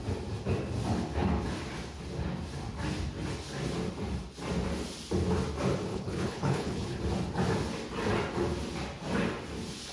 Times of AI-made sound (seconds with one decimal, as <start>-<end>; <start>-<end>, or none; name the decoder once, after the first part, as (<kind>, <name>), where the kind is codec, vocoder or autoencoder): 5.9-7.0 (codec, HILCodec)